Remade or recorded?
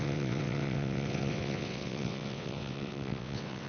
remade